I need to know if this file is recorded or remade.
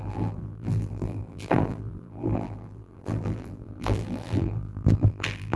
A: remade